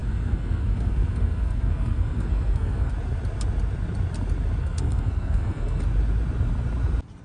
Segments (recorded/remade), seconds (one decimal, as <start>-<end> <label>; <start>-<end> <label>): 0.0-2.9 remade; 2.9-4.6 recorded; 4.6-5.8 remade; 5.8-7.2 recorded